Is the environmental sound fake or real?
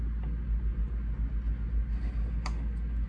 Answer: real